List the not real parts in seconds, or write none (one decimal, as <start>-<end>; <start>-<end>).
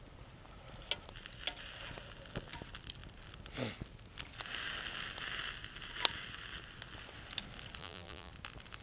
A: 7.8-8.3